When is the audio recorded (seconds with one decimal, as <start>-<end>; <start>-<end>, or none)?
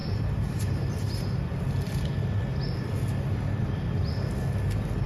1.4-5.1